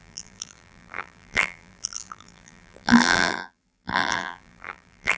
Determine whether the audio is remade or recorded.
remade